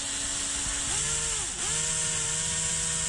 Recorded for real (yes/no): yes